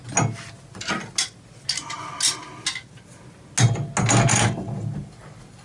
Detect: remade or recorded recorded